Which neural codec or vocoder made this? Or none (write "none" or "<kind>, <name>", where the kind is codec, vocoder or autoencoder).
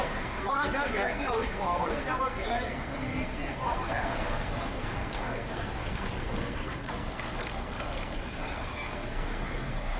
codec, SNAC